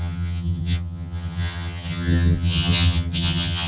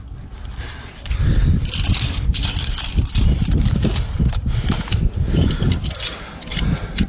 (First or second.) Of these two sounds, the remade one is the first